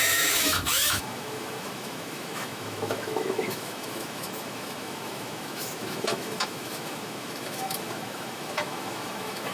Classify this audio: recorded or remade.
remade